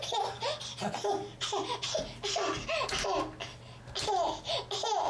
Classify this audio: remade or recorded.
recorded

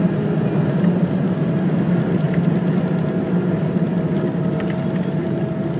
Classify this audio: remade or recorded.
recorded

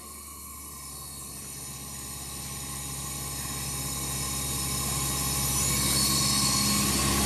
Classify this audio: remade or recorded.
recorded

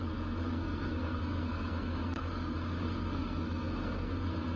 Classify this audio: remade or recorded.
remade